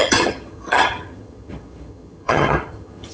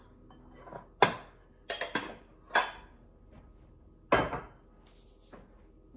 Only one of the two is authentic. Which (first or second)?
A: second